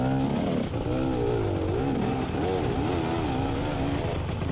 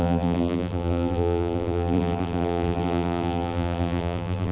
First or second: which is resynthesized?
second